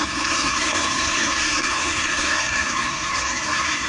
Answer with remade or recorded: remade